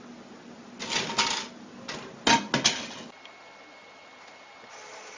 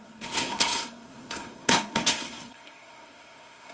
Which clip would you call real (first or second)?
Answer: first